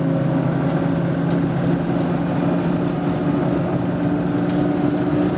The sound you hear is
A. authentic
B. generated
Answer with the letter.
A